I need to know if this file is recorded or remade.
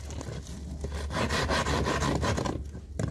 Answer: recorded